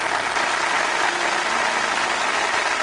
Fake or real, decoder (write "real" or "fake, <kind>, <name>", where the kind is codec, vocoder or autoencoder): real